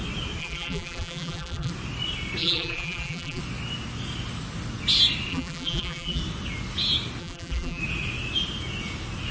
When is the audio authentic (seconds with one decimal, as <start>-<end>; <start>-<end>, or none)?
0.0-0.4; 1.7-2.4; 3.4-5.3; 6.2-7.2; 7.8-9.3